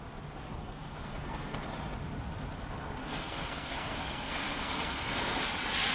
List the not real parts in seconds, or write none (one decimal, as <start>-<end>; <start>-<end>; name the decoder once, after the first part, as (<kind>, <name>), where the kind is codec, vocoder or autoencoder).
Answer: 0.5-1.7 (codec, SNAC); 3.0-5.4